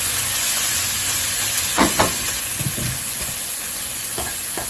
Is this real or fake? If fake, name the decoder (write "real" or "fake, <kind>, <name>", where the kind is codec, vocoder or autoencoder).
fake, vocoder, Vocos